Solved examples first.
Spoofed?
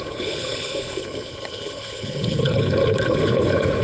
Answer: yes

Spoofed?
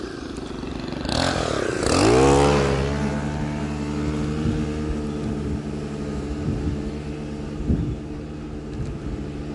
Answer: no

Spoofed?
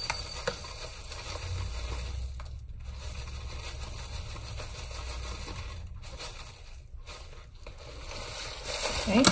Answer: no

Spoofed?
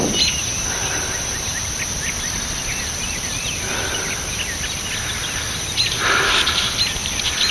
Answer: yes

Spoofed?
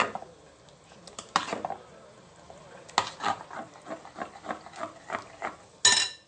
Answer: no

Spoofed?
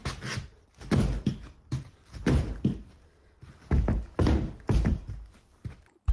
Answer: no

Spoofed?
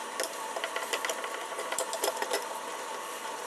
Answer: no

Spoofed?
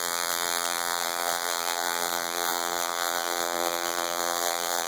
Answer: yes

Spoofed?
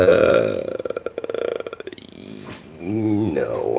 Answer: yes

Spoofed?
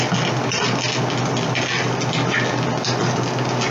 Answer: no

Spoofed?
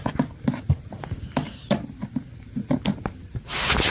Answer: no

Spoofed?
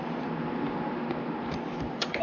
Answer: no